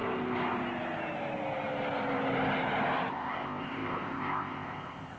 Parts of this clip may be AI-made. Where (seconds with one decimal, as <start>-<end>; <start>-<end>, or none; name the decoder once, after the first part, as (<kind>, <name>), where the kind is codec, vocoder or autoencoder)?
3.1-5.2 (codec, ZipCodec)